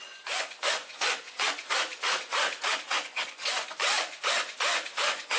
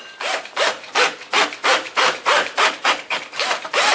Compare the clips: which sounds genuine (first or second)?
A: second